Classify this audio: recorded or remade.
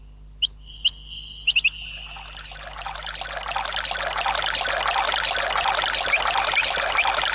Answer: recorded